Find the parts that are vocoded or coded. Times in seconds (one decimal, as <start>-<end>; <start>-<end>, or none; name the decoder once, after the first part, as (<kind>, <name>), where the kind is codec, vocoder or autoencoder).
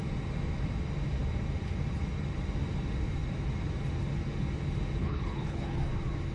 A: 5.0-5.8 (codec, HILCodec)